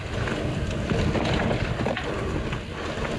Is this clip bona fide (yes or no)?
yes